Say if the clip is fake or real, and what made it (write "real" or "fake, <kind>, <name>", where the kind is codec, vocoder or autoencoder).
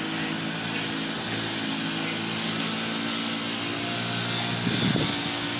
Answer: real